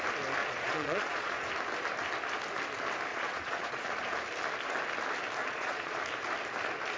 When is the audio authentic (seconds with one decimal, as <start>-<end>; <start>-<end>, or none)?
0.0-0.4; 1.5-3.1; 3.9-5.4; 6.0-7.0